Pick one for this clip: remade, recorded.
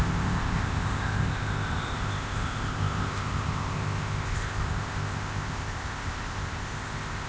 remade